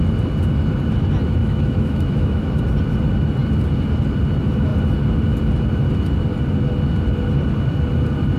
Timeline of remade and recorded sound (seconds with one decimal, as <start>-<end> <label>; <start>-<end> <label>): 0.0-1.4 recorded; 1.4-2.6 remade; 2.6-8.4 recorded